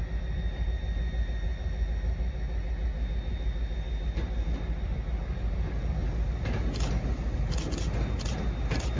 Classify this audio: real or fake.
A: real